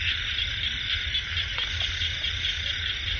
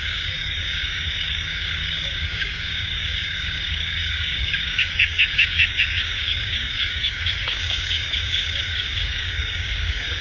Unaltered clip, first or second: first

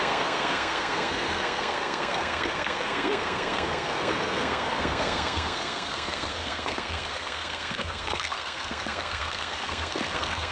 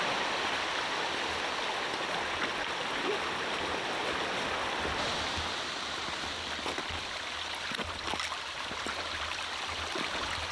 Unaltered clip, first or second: second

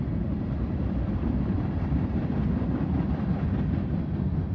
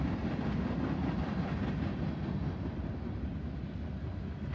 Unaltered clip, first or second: second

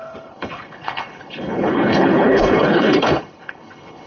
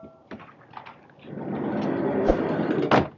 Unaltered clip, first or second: second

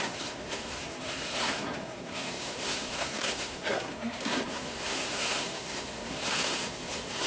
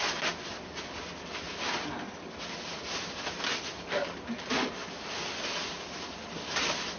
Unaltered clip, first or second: second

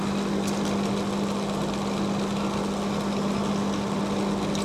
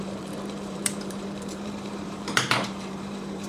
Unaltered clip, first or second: first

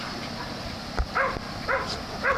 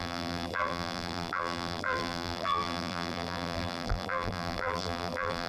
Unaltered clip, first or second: first